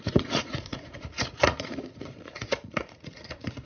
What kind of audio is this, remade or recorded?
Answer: remade